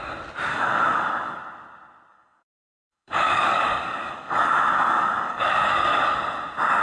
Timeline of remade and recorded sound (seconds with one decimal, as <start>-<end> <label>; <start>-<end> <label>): 0.0-0.5 recorded; 0.5-1.4 remade; 1.4-2.1 recorded; 2.1-6.2 remade; 6.2-6.8 recorded